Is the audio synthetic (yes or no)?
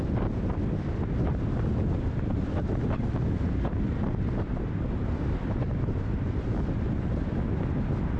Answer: no